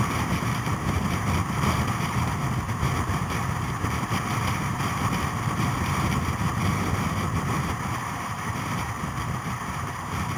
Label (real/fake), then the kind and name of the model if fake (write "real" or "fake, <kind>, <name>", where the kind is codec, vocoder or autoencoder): fake, vocoder, BigVGAN v2